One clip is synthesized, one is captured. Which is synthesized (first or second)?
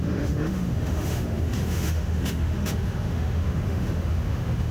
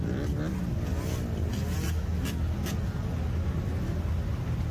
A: first